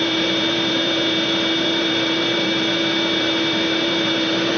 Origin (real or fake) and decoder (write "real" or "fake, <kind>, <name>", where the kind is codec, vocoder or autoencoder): fake, vocoder, BigVGAN v2